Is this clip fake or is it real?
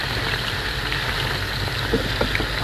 real